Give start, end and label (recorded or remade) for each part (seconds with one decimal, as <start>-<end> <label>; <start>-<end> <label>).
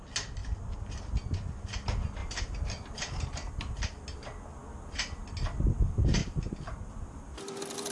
0.0-0.4 recorded; 0.4-1.0 remade; 1.0-2.2 recorded; 2.2-3.8 remade; 3.8-6.2 recorded; 6.2-6.9 remade; 6.9-7.9 recorded